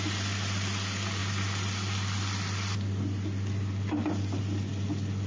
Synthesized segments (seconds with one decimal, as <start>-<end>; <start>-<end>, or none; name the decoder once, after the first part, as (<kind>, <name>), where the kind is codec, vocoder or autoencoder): none